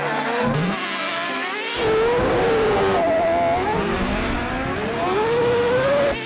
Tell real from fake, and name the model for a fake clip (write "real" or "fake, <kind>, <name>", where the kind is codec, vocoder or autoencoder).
real